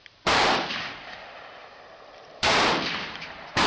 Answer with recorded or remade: remade